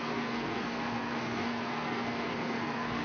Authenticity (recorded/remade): remade